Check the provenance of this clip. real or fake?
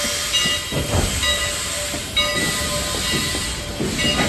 real